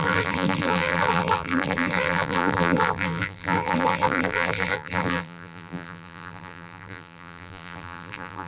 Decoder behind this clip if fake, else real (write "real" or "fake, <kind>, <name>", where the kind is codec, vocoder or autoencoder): fake, vocoder, BigVGAN v2